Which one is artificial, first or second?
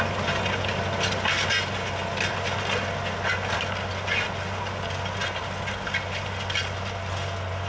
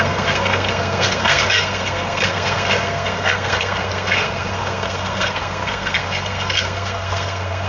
second